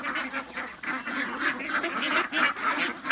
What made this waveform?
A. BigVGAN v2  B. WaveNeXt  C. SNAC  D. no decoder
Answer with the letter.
D